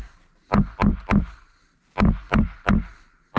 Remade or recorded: recorded